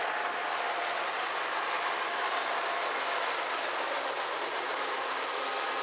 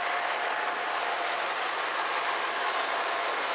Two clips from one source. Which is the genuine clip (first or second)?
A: first